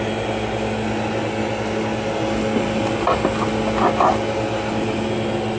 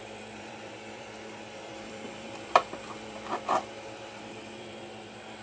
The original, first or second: first